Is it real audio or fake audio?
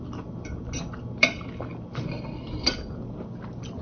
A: real